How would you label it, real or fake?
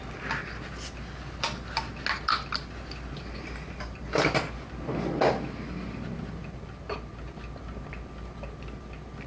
real